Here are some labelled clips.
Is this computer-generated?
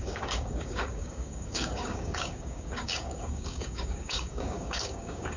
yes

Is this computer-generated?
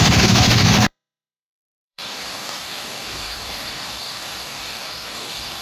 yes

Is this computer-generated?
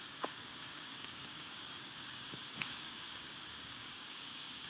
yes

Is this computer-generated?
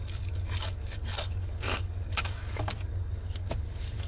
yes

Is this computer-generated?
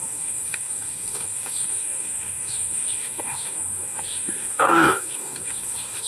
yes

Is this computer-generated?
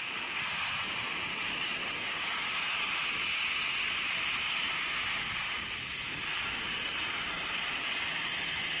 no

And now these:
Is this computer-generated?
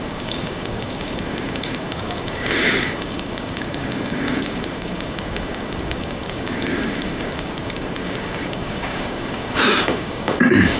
yes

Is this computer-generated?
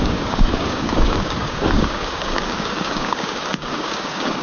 yes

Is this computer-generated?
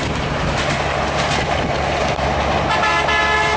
no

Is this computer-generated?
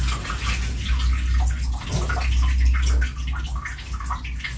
no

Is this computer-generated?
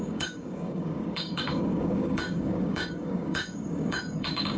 yes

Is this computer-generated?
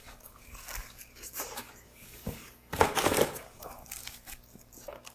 yes